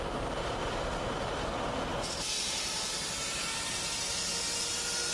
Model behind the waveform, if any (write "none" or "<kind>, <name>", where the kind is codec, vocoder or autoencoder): none